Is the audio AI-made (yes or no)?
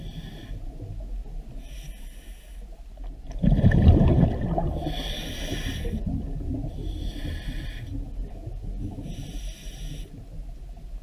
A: no